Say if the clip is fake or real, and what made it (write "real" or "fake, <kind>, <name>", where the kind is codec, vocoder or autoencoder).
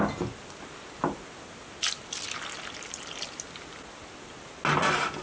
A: real